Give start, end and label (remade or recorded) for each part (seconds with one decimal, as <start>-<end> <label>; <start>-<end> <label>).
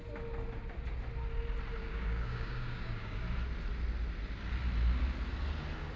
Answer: 0.0-1.8 recorded; 1.8-3.2 remade; 3.2-6.0 recorded